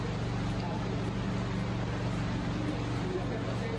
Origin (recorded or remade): recorded